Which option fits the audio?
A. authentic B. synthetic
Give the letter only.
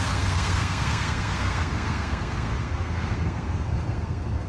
B